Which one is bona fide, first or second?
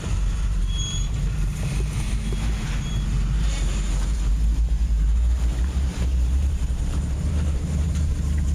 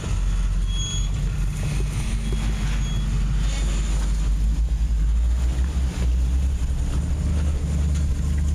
second